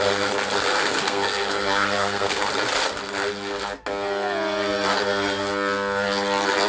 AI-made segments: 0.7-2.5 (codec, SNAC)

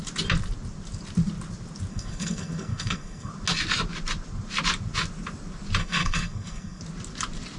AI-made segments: 1.9-3.3 (codec, SNAC); 5.8-6.8

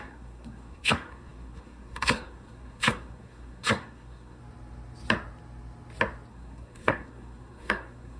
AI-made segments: 0.0-4.4 (codec, SNAC); 6.3-8.2

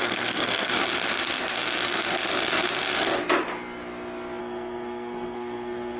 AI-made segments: 0.0-0.8 (codec, SNAC); 4.4-6.0

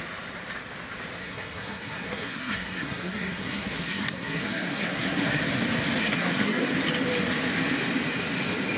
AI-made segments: 1.2-5.4 (codec, SNAC); 6.0-6.7

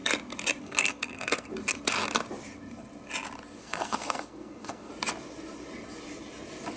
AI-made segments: 0.6-1.5 (codec, SNAC); 3.6-4.9

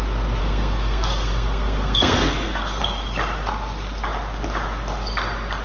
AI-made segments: 0.4-2.8 (codec, SNAC)